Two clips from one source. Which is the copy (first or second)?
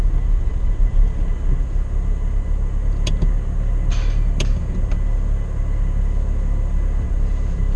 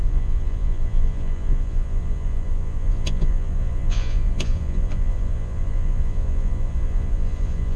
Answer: second